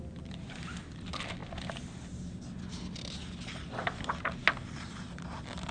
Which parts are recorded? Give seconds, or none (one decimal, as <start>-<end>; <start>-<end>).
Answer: 0.0-5.7